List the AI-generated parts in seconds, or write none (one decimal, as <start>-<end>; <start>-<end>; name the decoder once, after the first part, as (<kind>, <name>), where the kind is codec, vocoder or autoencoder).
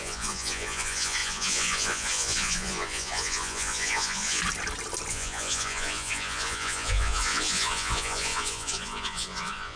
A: 0.0-4.4 (vocoder, Vocos); 5.1-9.8